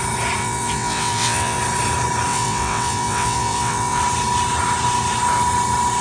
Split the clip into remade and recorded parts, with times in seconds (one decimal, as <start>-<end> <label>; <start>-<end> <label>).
0.0-0.4 recorded; 0.4-1.6 remade; 1.6-2.3 recorded; 2.3-4.0 remade; 4.0-6.0 recorded